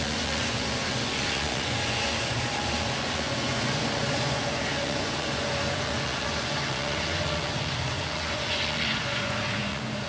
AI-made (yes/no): yes